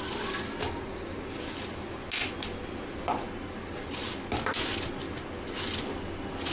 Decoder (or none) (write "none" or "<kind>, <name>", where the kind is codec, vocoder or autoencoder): none